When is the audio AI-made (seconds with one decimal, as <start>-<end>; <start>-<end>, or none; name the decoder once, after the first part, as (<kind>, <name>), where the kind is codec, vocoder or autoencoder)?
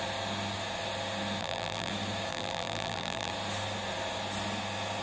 1.4-1.9 (vocoder, BigVGAN v2); 2.3-3.3